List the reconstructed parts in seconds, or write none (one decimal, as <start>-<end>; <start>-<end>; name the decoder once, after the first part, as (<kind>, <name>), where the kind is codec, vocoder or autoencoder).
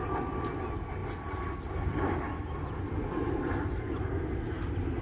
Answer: none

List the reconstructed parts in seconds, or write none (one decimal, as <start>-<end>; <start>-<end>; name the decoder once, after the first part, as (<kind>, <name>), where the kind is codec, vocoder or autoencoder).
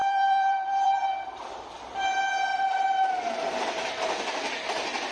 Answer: 0.0-1.8 (vocoder, BigVGAN v2); 2.5-3.3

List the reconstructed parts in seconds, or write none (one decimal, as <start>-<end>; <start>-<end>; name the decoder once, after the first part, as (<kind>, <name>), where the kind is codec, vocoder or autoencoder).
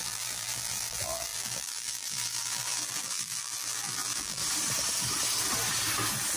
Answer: 0.0-4.4 (vocoder, BigVGAN v2)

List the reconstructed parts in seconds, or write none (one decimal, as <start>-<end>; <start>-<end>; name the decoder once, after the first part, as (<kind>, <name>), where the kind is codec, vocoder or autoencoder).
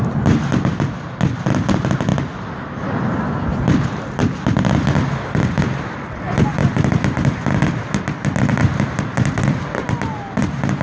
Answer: 6.6-9.6 (vocoder, BigVGAN v2)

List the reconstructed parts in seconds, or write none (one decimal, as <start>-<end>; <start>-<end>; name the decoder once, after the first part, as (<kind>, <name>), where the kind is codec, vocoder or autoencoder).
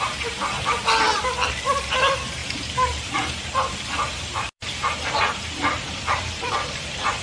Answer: 0.0-7.2 (vocoder, BigVGAN v2)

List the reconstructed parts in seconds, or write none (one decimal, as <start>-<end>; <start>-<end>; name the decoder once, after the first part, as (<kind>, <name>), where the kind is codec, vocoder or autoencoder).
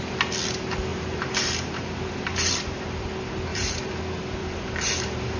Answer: 0.9-3.1 (vocoder, BigVGAN v2); 3.5-4.0; 4.4-5.4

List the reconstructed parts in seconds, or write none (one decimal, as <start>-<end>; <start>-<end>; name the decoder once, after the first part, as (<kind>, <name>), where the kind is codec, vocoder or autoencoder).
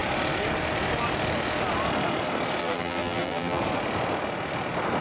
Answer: 2.6-3.6 (vocoder, BigVGAN v2)